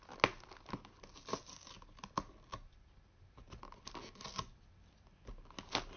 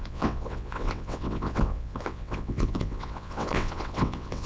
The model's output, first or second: second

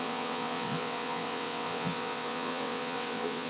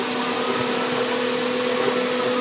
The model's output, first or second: first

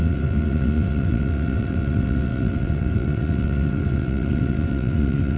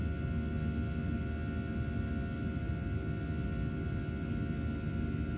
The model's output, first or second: first